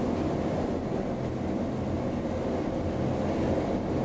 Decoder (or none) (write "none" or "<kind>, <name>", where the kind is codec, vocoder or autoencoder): none